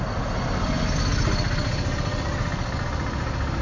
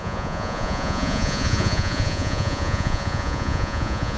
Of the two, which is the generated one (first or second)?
second